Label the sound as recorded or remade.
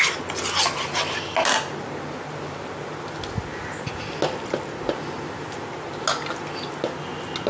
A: recorded